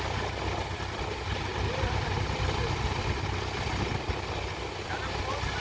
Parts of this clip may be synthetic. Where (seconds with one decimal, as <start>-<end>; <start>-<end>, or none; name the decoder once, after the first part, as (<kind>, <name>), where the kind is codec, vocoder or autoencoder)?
none